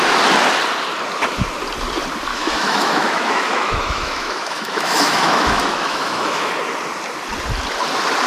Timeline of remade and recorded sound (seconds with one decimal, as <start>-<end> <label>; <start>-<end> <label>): 0.0-2.3 recorded; 2.3-6.5 remade; 6.5-8.3 recorded